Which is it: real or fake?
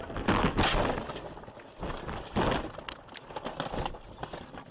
real